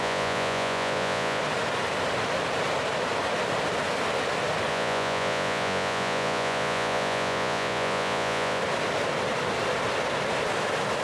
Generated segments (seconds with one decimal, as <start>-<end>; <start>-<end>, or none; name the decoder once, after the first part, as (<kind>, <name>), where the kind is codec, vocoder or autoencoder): 0.0-1.4 (vocoder, Vocos); 4.7-8.6